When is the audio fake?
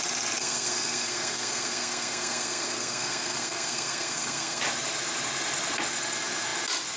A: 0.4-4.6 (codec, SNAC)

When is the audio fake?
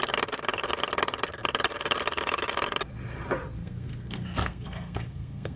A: 3.6-5.6 (codec, SNAC)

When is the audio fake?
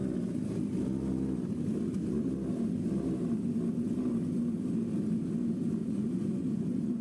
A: 5.8-7.0 (vocoder, Vocos)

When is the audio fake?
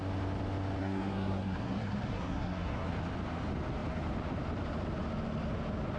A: 0.8-2.9 (codec, SNAC)